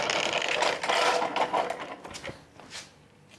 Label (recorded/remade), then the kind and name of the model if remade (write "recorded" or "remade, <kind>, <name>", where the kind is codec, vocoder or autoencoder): recorded